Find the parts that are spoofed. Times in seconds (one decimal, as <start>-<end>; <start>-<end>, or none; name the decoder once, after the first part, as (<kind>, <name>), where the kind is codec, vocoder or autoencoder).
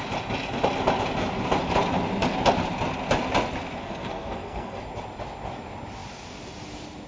3.8-4.8 (codec, SNAC)